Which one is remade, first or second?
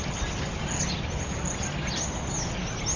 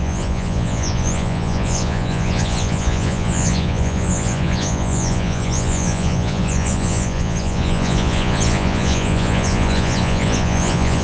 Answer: second